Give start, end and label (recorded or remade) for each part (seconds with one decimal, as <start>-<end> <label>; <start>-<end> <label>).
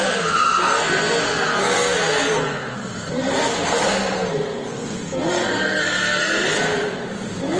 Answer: 0.0-6.7 remade; 6.7-7.6 recorded